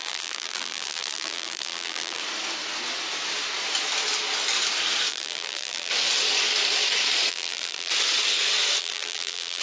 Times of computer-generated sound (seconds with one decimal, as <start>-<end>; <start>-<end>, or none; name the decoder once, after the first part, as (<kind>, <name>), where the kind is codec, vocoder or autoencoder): 0.0-2.2 (vocoder, BigVGAN v2); 5.1-5.9; 7.3-7.9; 8.8-9.6